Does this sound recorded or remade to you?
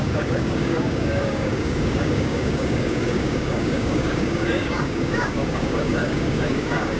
remade